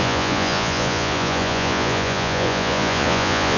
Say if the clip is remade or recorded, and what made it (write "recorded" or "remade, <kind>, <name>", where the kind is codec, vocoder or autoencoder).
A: remade, vocoder, Vocos